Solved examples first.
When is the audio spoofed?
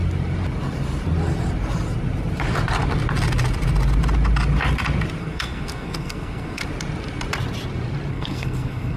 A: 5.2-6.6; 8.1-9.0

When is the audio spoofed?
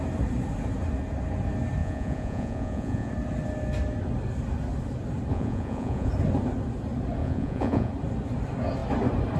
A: 1.8-3.1; 5.3-6.1; 7.2-7.9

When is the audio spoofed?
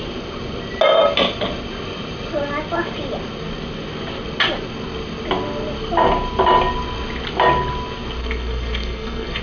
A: 8.2-9.4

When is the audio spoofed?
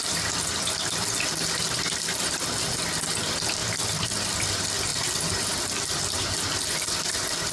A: 3.6-4.1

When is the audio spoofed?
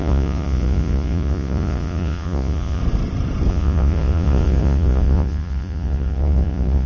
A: 0.0-2.8; 3.5-6.9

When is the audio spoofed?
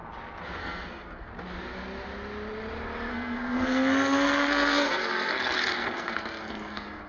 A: 0.6-1.3; 3.1-7.1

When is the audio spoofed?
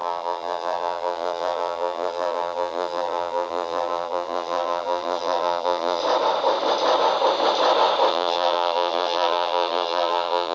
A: 0.0-6.0; 8.1-10.5